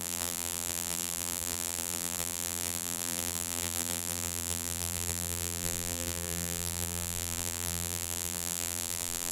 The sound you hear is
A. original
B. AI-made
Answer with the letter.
B